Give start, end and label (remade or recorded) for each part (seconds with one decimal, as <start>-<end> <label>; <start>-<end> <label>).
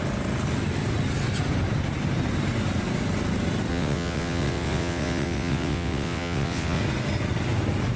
0.0-3.7 recorded; 3.7-6.8 remade; 6.8-8.0 recorded